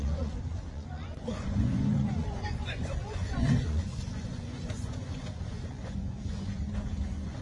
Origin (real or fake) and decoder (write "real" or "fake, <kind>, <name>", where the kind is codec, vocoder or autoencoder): fake, vocoder, Vocos